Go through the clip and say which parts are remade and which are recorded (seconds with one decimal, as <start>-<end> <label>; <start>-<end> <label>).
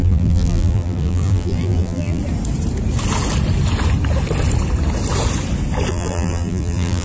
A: 0.0-2.2 remade; 2.2-5.9 recorded; 5.9-7.0 remade